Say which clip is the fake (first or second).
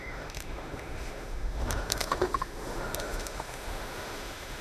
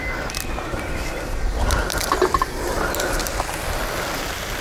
first